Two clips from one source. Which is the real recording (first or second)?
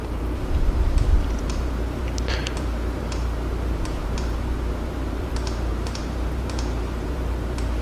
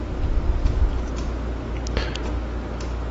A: second